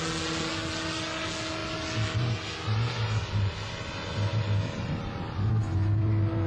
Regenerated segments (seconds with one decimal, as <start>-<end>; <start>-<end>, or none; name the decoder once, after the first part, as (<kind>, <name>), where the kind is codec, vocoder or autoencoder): none